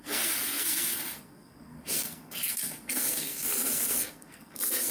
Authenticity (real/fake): fake